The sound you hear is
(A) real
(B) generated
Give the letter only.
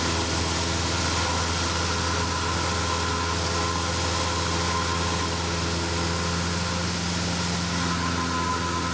A